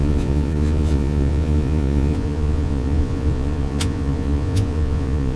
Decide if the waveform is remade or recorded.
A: remade